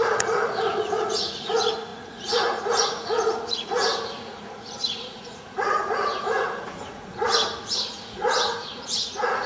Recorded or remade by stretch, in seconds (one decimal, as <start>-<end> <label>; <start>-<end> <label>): 0.0-9.5 remade